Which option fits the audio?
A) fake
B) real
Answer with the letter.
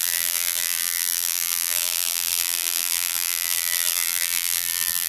A